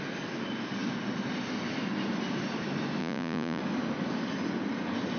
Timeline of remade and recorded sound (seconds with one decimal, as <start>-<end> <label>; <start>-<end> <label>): 0.0-3.0 recorded; 3.0-3.6 remade; 3.6-5.2 recorded